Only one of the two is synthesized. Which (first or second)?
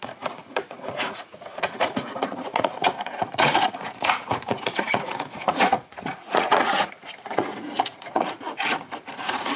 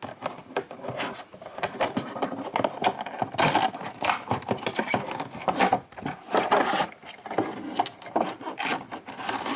first